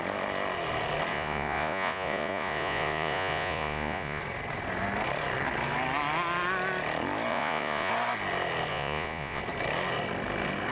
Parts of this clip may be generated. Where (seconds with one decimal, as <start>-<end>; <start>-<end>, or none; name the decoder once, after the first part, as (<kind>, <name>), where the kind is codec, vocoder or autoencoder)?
1.1-4.2 (vocoder, Vocos); 7.3-7.9; 8.7-9.4